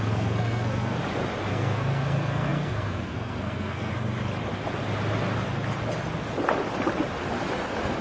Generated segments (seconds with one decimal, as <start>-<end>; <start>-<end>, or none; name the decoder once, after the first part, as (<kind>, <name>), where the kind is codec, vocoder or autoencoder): 0.0-1.0 (codec, SNAC); 1.5-3.9